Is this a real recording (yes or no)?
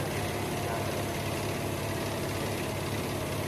yes